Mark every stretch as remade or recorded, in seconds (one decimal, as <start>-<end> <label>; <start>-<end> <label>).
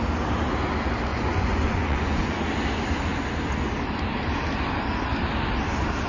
0.0-1.1 recorded; 1.1-2.3 remade; 2.3-6.1 recorded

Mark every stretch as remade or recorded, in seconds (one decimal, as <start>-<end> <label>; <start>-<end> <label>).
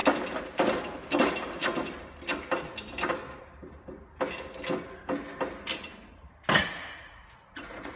0.0-6.6 recorded; 6.6-8.0 remade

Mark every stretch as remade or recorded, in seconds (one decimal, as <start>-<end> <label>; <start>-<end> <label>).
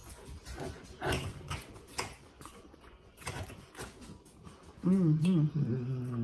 0.0-3.7 remade; 3.7-4.8 recorded; 4.8-5.5 remade; 5.5-6.2 recorded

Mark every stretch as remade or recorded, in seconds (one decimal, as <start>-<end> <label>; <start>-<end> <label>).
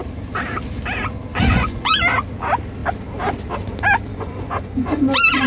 0.0-1.3 recorded; 1.3-1.9 remade; 1.9-4.1 recorded; 4.1-5.0 remade; 5.0-5.5 recorded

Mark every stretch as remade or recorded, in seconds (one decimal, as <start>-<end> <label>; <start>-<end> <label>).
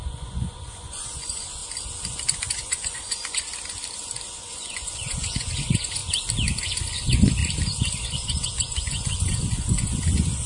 0.0-1.6 remade; 1.6-2.4 recorded; 2.4-3.5 remade; 3.5-4.3 recorded; 4.3-6.0 remade; 6.0-6.6 recorded; 6.6-7.4 remade; 7.4-8.0 recorded; 8.0-10.5 remade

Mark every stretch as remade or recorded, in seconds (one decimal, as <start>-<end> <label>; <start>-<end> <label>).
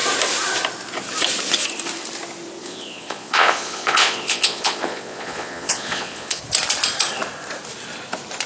0.0-2.6 recorded; 2.6-6.4 remade; 6.4-8.5 recorded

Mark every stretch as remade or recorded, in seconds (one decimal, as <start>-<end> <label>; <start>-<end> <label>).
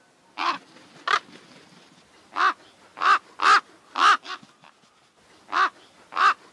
0.0-6.5 recorded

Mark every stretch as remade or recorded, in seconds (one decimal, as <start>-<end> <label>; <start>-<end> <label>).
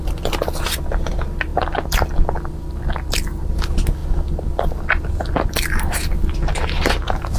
0.0-7.4 recorded